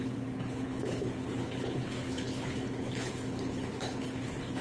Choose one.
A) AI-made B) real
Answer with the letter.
A